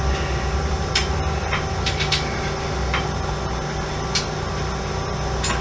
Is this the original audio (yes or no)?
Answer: no